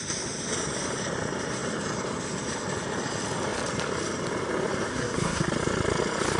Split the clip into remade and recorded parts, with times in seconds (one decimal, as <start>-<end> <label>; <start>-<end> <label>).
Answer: 0.0-4.9 recorded; 4.9-5.5 remade; 5.5-6.4 recorded